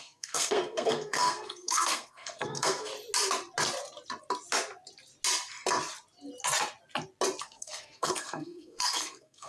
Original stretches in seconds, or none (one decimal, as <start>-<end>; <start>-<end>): 2.9-7.4